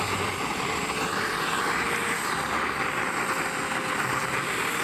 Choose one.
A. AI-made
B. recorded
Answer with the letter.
A